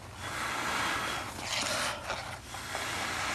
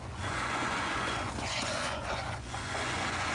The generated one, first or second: second